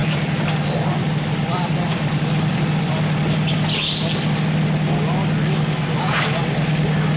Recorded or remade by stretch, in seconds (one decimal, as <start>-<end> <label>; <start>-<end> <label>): 0.0-4.3 remade; 4.3-7.2 recorded